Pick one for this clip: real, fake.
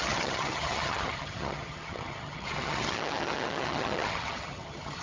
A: fake